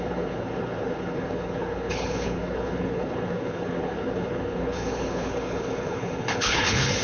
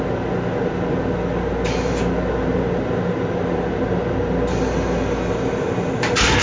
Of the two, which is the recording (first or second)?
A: second